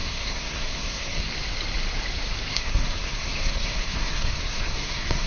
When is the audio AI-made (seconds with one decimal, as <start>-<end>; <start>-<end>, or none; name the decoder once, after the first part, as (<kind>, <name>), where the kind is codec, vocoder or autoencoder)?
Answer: 0.0-1.3 (codec, SNAC); 2.5-5.3